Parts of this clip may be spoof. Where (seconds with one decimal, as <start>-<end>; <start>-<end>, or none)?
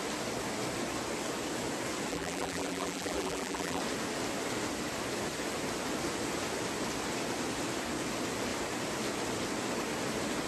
2.1-3.8